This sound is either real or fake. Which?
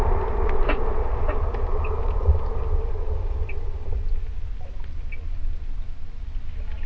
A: real